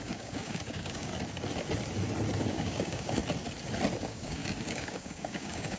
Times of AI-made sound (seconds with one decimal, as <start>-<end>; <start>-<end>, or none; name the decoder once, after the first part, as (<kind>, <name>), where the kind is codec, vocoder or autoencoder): 0.0-1.1 (codec, DAC); 2.5-3.2; 4.0-5.8